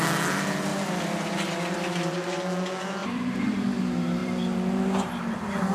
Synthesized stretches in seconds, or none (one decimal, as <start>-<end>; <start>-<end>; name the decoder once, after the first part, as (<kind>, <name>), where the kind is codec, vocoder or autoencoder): 0.7-2.4 (vocoder, BigVGAN v2); 3.0-3.8; 4.2-5.1